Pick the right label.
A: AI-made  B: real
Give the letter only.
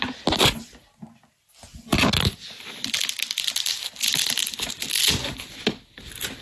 B